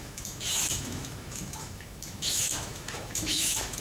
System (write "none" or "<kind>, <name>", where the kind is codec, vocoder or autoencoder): autoencoder, DAC-VAE